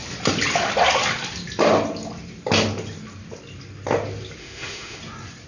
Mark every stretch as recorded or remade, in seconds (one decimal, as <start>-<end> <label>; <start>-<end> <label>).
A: 0.0-4.4 recorded; 4.4-5.0 remade; 5.0-5.5 recorded